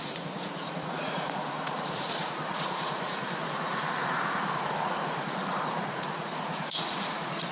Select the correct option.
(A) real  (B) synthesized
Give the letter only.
B